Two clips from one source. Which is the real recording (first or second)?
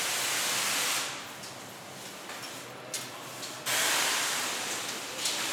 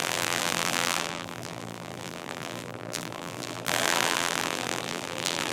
first